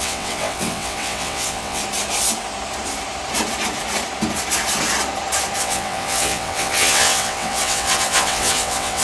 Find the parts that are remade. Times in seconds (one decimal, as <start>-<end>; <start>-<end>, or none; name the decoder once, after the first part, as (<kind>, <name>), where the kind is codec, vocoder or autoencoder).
0.0-1.8 (vocoder, WaveNeXt); 5.6-9.0